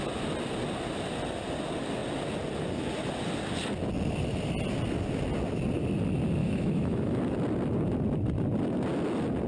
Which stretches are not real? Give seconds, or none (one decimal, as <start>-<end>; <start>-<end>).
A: 6.4-7.2